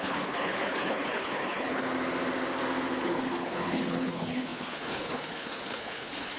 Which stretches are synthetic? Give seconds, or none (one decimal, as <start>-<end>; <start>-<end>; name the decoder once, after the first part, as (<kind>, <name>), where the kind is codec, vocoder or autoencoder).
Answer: 0.0-1.9 (codec, HILCodec); 3.0-6.4